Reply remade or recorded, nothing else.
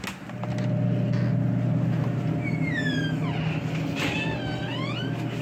recorded